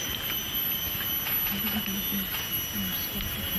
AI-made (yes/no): no